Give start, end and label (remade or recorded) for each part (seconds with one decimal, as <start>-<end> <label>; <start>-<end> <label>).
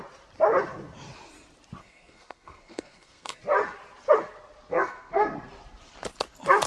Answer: 0.0-1.8 recorded; 1.8-3.4 remade; 3.4-4.7 recorded; 4.7-5.3 remade; 5.3-6.7 recorded